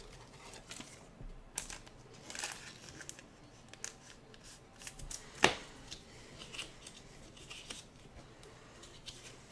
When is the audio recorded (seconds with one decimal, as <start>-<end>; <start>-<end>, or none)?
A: 0.0-9.5